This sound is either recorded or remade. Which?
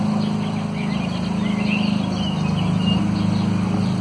recorded